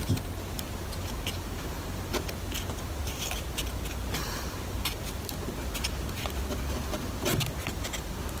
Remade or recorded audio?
recorded